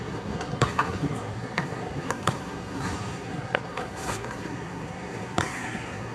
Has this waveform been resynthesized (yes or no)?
yes